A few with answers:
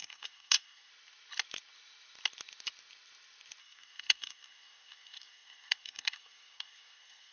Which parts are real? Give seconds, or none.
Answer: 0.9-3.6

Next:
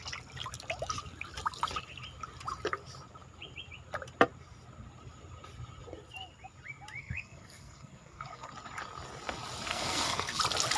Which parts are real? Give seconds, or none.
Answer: 0.0-7.0; 8.5-9.7; 10.4-10.8